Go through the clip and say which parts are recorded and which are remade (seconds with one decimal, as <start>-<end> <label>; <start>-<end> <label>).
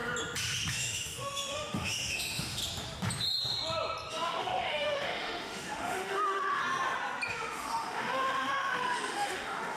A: 0.0-0.7 recorded; 0.7-2.6 remade; 2.6-4.1 recorded; 4.1-6.6 remade; 6.6-7.3 recorded; 7.3-9.8 remade